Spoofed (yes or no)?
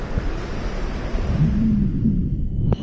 no